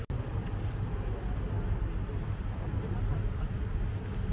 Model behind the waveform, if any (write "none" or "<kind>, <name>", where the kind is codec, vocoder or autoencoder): none